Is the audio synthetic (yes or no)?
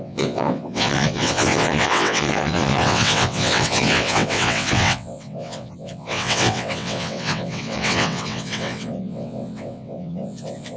yes